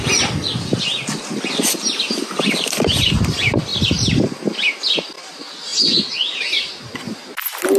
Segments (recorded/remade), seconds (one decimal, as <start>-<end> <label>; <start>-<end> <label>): 0.0-7.8 recorded